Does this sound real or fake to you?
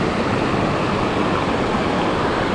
real